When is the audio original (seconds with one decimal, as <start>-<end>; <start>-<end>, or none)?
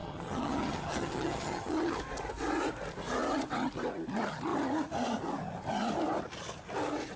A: 2.0-7.2